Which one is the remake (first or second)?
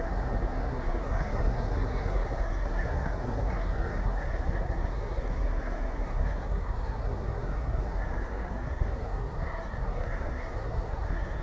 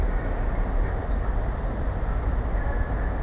first